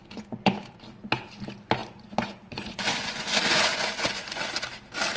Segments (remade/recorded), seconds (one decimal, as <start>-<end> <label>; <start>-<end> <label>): 0.0-0.5 remade; 0.5-1.8 recorded; 1.8-4.4 remade; 4.4-5.2 recorded